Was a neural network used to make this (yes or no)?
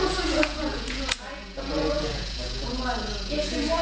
yes